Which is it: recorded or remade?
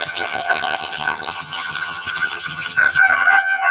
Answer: remade